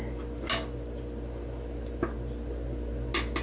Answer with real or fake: real